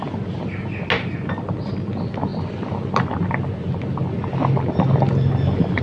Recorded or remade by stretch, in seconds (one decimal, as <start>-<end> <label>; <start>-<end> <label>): 0.0-5.8 recorded